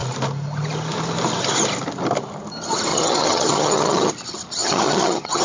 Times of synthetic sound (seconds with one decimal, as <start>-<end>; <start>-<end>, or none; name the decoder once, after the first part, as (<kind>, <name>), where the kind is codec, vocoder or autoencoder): 2.9-4.1 (vocoder, HiFi-GAN); 4.6-5.4